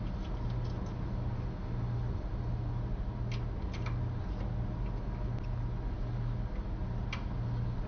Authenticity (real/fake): real